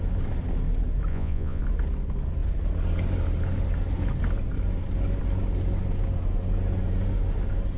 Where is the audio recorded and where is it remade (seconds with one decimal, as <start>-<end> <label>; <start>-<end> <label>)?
0.0-1.1 recorded; 1.1-1.6 remade; 1.6-7.8 recorded